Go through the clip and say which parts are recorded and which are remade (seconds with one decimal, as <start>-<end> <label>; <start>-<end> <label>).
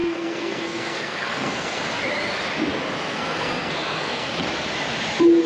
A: 0.0-1.8 remade; 1.8-3.1 recorded; 3.1-4.3 remade; 4.3-5.5 recorded